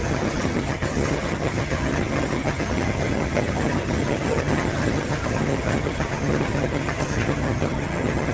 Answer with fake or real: fake